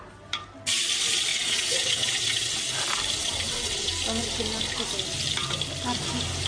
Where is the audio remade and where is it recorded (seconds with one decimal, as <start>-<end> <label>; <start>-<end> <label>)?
0.0-1.3 recorded; 1.3-2.6 remade; 2.6-3.2 recorded; 3.2-3.9 remade; 3.9-6.5 recorded